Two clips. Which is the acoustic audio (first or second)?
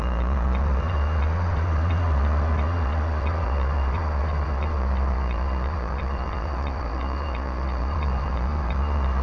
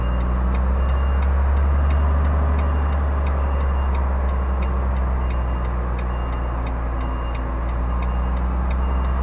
second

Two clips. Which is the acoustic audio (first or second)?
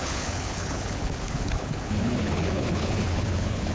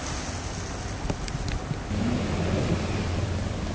second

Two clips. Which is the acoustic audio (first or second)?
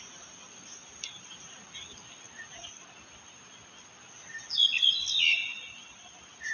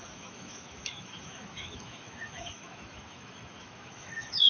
first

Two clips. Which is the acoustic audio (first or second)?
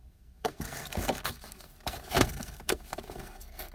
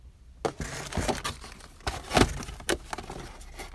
second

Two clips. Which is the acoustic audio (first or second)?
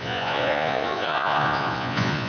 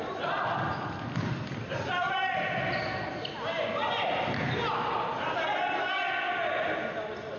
second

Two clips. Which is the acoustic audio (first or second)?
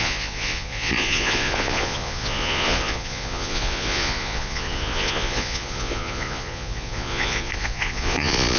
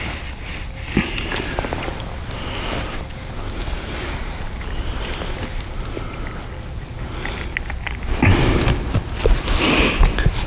second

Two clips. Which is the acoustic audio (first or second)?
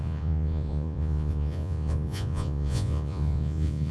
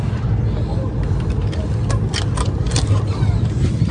second